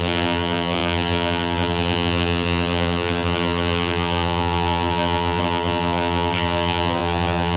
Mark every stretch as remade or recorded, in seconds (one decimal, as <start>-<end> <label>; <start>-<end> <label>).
0.0-7.6 remade